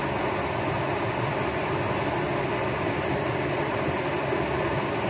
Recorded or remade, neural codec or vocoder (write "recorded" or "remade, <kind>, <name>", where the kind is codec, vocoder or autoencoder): recorded